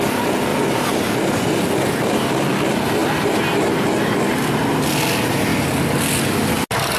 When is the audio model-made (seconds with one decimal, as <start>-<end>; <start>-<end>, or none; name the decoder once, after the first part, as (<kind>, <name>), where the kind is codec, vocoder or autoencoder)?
none